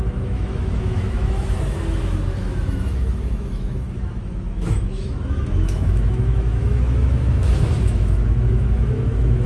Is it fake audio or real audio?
fake